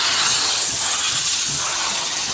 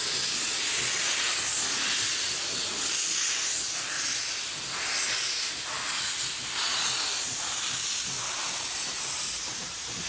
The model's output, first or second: first